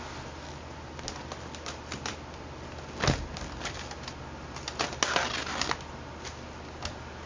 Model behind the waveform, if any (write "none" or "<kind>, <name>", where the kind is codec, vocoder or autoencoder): none